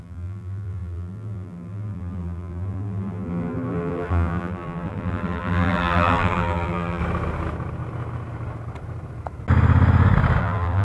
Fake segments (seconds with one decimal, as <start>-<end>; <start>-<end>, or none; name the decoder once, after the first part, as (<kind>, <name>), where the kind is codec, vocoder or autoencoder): 0.0-7.0 (vocoder, BigVGAN v2); 10.4-10.8